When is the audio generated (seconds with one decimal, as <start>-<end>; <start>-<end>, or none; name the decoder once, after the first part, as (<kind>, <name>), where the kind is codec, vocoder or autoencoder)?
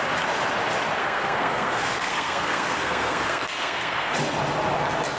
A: 1.0-4.1 (codec, SNAC)